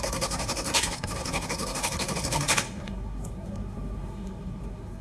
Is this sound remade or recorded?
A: remade